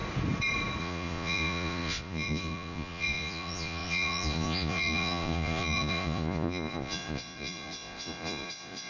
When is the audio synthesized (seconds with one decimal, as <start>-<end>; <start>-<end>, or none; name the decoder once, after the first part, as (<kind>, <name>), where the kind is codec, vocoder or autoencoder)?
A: 0.8-8.9 (vocoder, Vocos)